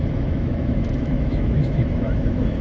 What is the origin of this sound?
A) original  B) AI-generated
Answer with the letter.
B